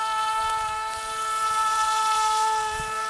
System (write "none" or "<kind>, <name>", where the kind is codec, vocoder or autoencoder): vocoder, BigVGAN v2